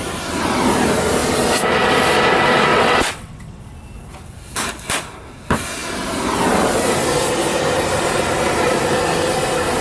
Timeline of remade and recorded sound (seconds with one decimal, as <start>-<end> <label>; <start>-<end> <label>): 0.0-2.7 recorded; 2.7-3.6 remade; 3.6-9.8 recorded